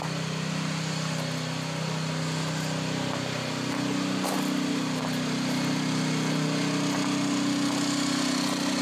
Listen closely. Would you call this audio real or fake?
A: real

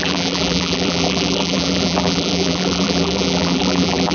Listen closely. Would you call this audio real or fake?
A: fake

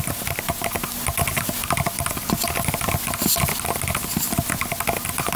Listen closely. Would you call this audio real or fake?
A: real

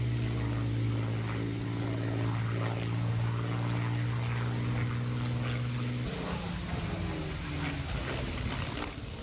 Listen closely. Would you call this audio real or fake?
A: real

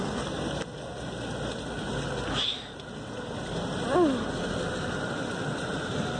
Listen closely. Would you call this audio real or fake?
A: real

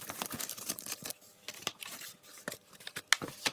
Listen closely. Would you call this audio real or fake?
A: fake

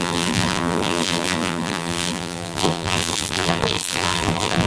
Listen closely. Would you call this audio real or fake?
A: fake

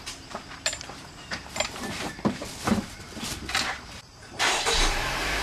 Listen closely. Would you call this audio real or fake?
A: fake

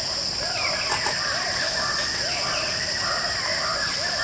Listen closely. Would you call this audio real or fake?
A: fake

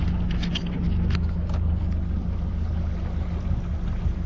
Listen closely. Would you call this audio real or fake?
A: real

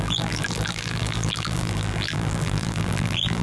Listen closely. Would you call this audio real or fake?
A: fake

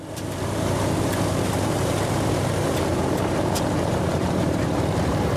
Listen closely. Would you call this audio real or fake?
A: fake